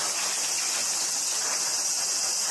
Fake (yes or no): no